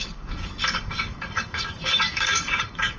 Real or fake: fake